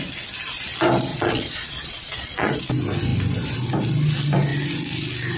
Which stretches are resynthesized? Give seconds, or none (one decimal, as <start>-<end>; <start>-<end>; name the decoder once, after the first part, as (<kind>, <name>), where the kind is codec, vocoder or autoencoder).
1.1-2.6 (vocoder, Vocos)